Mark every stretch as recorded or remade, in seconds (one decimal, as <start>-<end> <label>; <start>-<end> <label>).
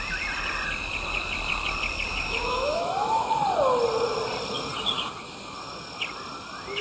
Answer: 0.0-2.1 recorded; 2.1-3.3 remade; 3.3-6.8 recorded